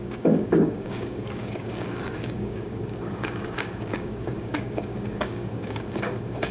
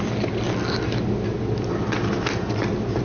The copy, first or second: first